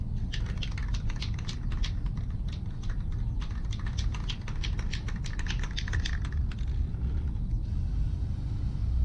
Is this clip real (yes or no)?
yes